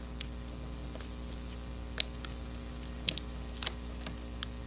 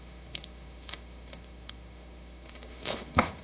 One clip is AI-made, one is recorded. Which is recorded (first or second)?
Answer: first